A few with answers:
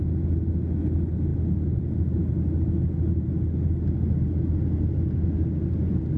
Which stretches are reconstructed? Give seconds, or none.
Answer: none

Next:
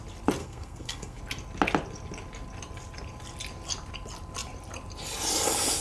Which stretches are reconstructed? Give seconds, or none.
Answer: 0.4-1.2 (codec, SNAC)

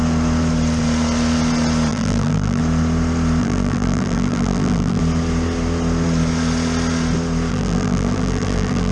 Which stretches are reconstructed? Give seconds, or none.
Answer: 1.9-2.6 (vocoder, BigVGAN v2); 3.4-5.0; 7.5-8.9

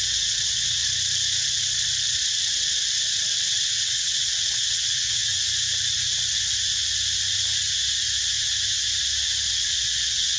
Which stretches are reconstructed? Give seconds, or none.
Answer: 0.0-0.8 (vocoder, WaveNeXt); 3.6-5.3; 9.5-10.4

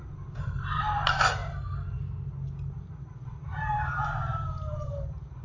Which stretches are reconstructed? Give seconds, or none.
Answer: 0.0-1.4 (vocoder, BigVGAN v2); 3.0-5.4